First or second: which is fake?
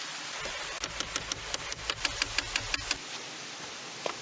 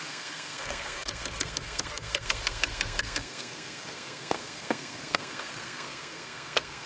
second